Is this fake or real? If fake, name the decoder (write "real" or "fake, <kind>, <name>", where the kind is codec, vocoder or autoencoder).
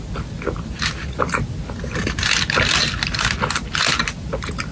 real